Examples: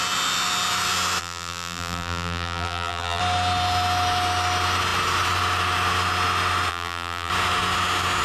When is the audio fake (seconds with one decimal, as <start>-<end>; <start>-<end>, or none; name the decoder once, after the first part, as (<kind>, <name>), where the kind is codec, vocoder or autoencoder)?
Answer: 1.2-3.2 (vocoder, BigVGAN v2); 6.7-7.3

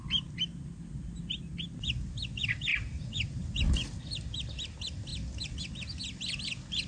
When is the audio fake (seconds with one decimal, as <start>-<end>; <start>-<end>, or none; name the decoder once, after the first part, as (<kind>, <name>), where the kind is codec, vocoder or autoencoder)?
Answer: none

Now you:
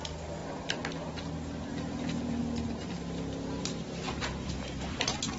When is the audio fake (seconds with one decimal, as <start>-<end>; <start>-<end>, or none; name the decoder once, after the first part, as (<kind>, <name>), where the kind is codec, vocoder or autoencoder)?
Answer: 0.4-1.2 (vocoder, BigVGAN v2); 1.7-2.4; 3.6-4.5